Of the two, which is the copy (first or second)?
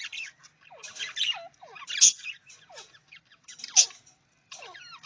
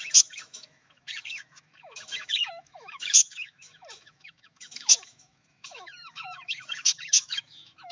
second